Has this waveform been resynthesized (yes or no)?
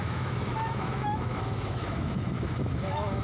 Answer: yes